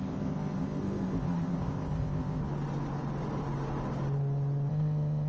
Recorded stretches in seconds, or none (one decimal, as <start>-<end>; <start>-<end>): 2.4-4.7